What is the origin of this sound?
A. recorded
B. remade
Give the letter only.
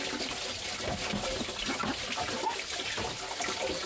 A